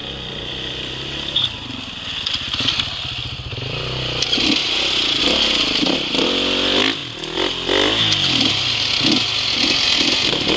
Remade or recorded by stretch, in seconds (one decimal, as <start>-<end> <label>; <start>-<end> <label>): 0.0-7.0 remade; 7.0-10.2 recorded; 10.2-10.6 remade